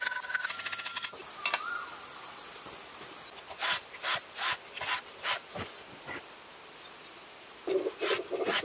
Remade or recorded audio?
recorded